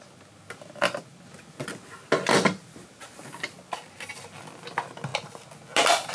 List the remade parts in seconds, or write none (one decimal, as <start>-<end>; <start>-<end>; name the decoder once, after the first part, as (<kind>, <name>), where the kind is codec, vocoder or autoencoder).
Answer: none